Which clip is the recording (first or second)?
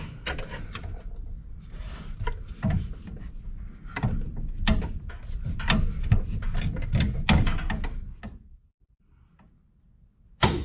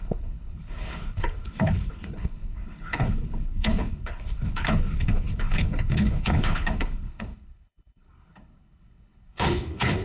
first